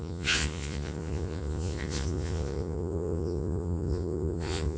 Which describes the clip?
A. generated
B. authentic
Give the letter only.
A